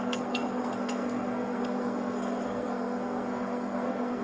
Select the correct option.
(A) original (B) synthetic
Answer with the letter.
B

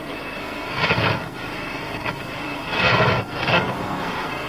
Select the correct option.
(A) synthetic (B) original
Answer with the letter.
A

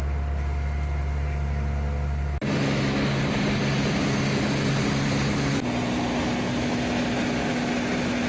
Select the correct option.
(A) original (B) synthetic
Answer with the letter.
A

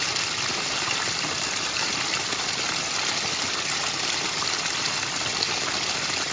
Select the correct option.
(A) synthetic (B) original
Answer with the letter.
B